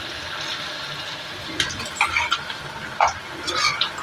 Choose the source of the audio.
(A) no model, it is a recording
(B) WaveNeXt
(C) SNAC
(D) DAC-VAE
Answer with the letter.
A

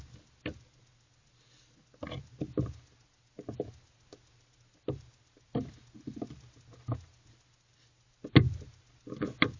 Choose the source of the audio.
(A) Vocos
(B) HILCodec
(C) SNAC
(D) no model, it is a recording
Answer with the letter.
D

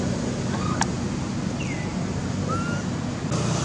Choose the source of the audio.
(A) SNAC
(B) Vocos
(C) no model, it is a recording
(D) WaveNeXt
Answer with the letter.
C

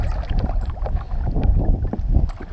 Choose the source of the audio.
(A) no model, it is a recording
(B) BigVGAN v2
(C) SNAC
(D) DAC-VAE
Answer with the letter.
A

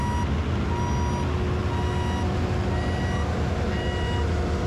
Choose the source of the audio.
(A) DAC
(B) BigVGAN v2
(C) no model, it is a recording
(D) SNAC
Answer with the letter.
C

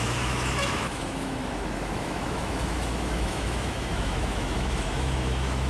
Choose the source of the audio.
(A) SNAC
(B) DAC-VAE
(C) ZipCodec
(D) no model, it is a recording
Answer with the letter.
B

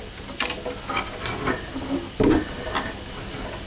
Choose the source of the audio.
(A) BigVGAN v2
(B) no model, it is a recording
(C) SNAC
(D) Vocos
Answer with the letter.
B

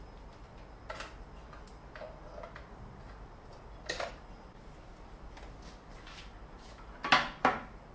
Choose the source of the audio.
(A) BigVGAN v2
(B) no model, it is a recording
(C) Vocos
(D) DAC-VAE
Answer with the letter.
B